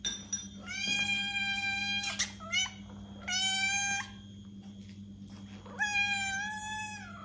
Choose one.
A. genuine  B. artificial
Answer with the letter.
A